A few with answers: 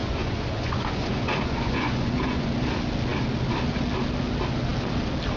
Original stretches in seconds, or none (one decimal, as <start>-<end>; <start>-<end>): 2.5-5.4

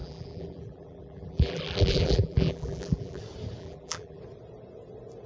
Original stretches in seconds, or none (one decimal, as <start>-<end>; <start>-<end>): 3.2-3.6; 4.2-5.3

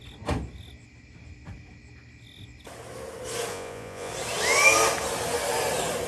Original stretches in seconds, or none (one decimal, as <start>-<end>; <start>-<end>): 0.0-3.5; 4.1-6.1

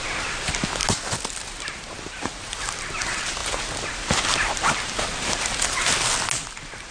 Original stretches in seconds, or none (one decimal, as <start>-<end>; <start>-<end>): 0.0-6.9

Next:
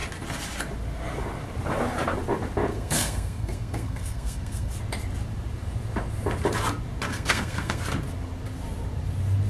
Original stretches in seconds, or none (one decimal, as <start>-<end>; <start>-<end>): 0.0-2.7; 4.7-7.1; 7.8-9.5

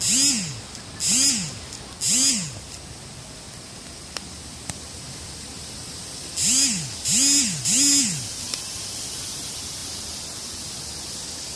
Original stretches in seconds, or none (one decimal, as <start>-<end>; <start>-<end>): 0.0-11.6